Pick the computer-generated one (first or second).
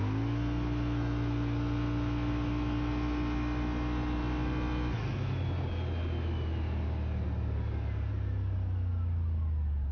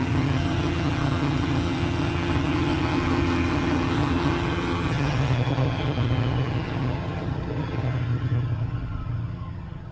second